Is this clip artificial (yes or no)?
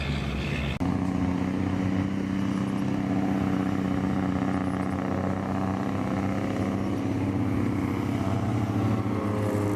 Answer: no